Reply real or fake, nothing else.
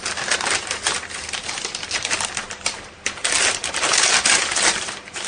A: real